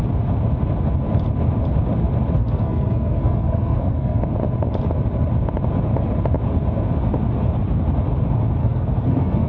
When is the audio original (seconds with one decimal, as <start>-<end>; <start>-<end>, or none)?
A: 0.0-2.4; 4.2-8.6